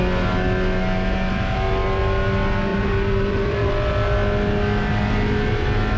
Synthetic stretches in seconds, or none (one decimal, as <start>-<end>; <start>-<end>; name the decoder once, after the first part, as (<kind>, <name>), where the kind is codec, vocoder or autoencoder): 2.7-3.7 (vocoder, BigVGAN v2)